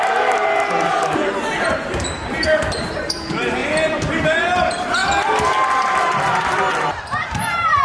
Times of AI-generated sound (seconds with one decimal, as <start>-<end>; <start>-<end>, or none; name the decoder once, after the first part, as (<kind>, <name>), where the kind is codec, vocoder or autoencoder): 0.0-0.4 (vocoder, BigVGAN v2); 1.5-3.6; 4.1-5.0; 7.0-7.8